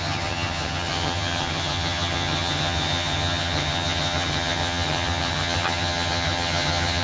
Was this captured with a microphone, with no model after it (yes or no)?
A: no